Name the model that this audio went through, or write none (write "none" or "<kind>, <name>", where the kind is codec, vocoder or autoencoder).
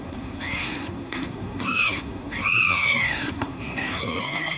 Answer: codec, SNAC